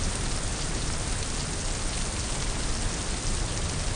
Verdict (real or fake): real